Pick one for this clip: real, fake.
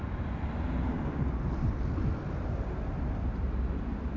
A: real